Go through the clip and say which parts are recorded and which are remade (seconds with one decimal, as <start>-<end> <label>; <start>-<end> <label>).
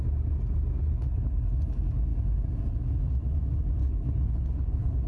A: 0.0-0.8 recorded; 0.8-1.4 remade; 1.4-3.8 recorded; 3.8-5.1 remade